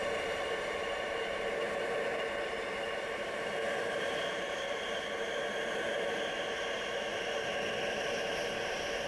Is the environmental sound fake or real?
real